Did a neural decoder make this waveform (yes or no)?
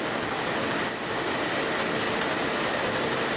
no